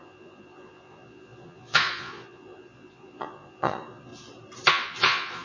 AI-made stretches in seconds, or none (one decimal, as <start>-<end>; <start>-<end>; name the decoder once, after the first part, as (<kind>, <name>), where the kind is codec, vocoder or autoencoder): 0.0-4.1 (vocoder, Vocos); 4.7-5.4